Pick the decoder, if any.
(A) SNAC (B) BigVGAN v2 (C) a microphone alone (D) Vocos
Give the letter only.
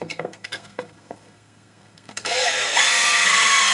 A